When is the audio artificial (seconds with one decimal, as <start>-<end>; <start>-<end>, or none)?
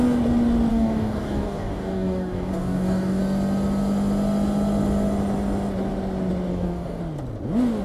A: 0.7-3.2; 6.5-7.0